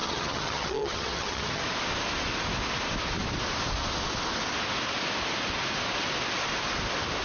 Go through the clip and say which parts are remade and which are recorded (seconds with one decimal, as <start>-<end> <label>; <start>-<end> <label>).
0.0-1.6 remade; 1.6-7.2 recorded